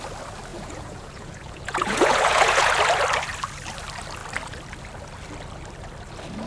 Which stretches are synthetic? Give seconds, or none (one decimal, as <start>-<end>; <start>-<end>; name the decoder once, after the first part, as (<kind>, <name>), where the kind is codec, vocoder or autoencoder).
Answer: 0.5-2.7 (vocoder, Vocos)